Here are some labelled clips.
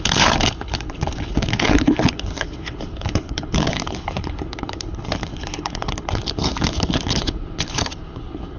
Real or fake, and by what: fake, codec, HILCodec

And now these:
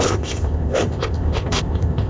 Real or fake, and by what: fake, codec, ZipCodec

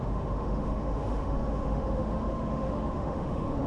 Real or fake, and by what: fake, autoencoder, DAC-VAE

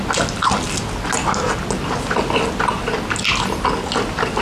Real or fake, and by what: real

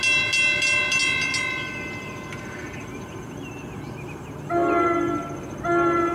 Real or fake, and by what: real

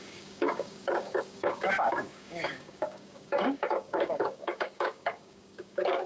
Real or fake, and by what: fake, codec, DAC